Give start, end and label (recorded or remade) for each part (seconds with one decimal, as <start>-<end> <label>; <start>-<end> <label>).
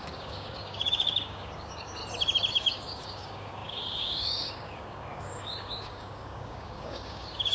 0.0-2.0 remade; 2.0-2.5 recorded; 2.5-7.5 remade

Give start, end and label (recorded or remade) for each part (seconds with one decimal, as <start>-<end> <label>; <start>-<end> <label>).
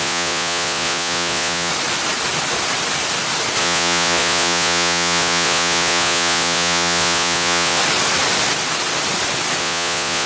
0.0-1.7 remade; 1.7-3.6 recorded; 3.6-7.8 remade; 7.8-9.6 recorded; 9.6-10.3 remade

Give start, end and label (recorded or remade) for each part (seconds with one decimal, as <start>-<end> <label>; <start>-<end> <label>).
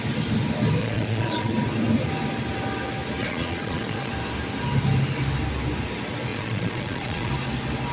0.0-0.8 recorded; 0.8-1.5 remade; 1.5-3.2 recorded; 3.2-4.1 remade; 4.1-6.3 recorded; 6.3-7.3 remade; 7.3-7.9 recorded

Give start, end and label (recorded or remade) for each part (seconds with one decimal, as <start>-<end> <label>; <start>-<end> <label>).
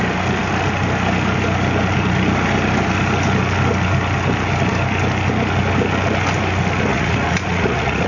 0.0-6.9 recorded; 6.9-8.1 remade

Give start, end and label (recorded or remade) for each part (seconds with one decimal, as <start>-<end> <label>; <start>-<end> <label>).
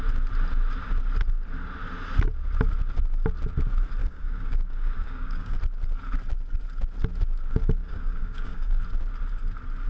0.0-4.0 recorded; 4.0-5.6 remade; 5.6-7.8 recorded; 7.8-8.8 remade; 8.8-9.9 recorded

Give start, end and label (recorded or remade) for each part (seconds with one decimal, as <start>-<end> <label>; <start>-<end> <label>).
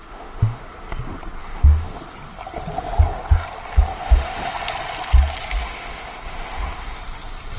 0.0-0.6 remade; 0.6-1.4 recorded; 1.4-2.0 remade; 2.0-3.9 recorded; 3.9-4.5 remade; 4.5-5.6 recorded; 5.6-7.0 remade; 7.0-7.6 recorded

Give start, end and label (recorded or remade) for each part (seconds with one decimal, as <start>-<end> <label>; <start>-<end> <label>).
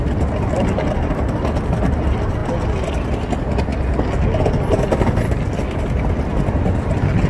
0.0-7.3 recorded